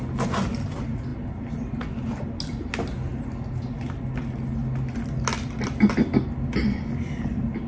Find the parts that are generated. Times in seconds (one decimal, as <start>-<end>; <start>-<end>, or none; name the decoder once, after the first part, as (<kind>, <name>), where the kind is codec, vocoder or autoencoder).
none